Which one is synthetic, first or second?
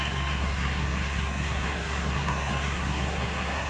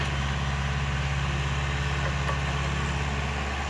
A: first